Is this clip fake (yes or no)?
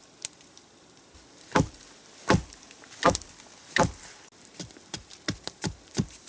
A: no